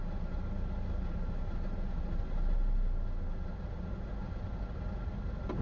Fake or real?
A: real